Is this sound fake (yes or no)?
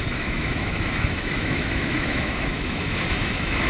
yes